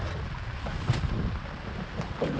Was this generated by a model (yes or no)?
no